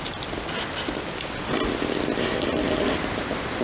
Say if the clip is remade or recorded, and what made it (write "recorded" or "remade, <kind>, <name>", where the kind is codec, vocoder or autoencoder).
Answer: recorded